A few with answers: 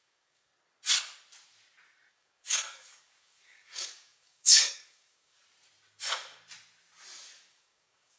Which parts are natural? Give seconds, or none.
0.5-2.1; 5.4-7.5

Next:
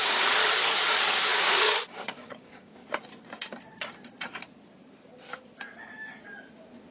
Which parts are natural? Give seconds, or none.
0.4-1.2; 2.8-6.9

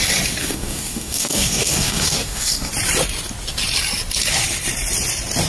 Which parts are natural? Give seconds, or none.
0.0-0.4; 2.7-5.5

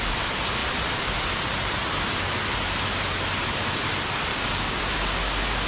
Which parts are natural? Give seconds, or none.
0.0-4.3; 4.8-5.7

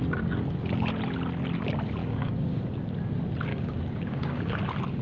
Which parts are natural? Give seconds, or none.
0.0-2.0; 2.6-3.5; 4.6-5.0